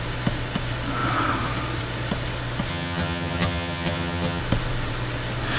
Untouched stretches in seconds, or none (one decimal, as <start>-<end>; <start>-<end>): 0.0-2.7; 4.4-5.6